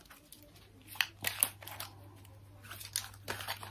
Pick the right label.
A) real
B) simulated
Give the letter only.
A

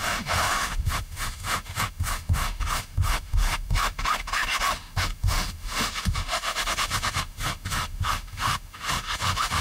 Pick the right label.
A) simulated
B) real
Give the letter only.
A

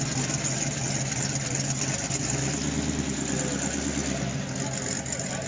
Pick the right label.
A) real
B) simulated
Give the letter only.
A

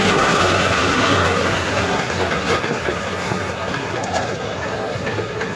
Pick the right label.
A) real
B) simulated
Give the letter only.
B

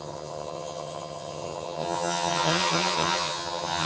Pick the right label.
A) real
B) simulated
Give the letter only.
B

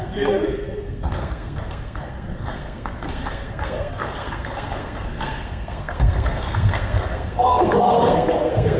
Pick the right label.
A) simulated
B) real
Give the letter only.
A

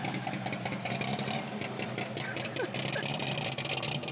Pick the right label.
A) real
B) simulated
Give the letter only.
A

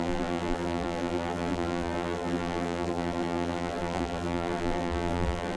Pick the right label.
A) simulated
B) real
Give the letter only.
A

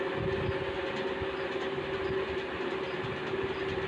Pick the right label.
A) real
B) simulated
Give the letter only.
A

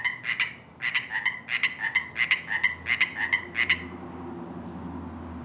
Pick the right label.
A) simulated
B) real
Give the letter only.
B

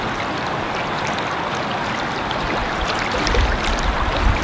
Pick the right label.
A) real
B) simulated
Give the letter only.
A